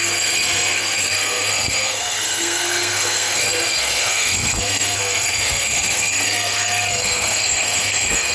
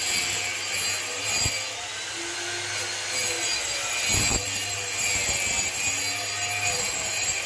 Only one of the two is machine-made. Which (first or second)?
first